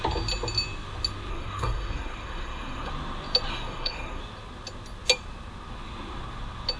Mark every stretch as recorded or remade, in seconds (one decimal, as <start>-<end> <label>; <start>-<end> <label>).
0.0-1.3 recorded; 1.3-2.9 remade; 2.9-3.5 recorded; 3.5-4.2 remade; 4.2-6.8 recorded